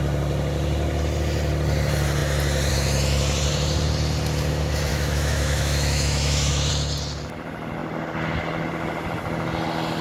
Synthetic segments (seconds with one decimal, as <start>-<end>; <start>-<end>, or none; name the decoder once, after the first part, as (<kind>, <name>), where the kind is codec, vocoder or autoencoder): 4.9-6.7 (autoencoder, DAC-VAE)